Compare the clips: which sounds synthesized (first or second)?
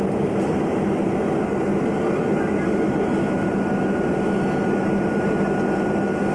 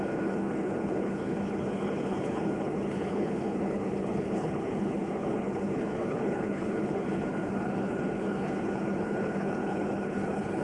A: second